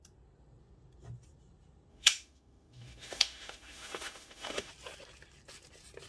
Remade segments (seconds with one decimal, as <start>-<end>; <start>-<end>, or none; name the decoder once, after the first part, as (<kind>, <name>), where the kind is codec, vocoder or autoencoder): 1.9-4.7 (autoencoder, DAC-VAE)